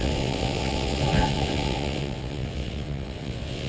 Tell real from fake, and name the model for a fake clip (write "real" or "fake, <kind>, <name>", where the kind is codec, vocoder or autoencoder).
fake, vocoder, WaveNeXt